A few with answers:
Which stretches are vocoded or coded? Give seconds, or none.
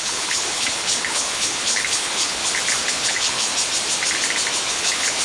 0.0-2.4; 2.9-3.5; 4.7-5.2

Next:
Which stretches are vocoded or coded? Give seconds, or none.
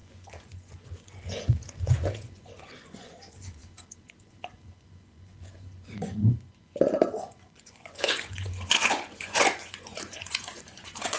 0.0-11.2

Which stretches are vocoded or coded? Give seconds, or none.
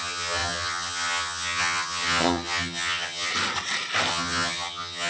0.0-3.3; 4.1-5.1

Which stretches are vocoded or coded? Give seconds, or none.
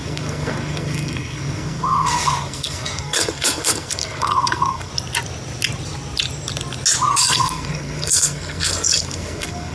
0.0-4.9; 7.1-9.7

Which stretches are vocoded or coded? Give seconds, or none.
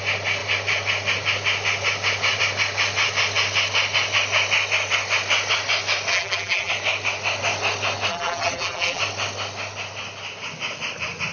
6.1-6.7; 8.1-9.0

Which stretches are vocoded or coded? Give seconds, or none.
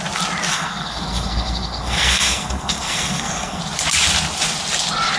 0.5-3.6